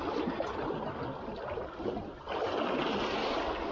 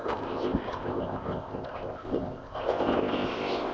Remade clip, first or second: second